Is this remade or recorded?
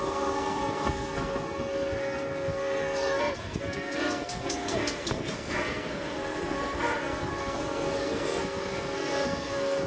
remade